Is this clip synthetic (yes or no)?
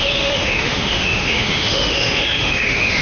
yes